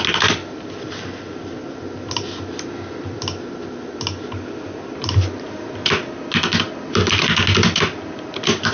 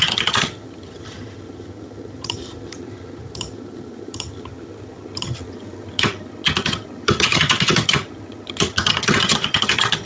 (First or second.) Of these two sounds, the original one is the first